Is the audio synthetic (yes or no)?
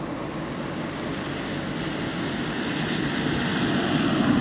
no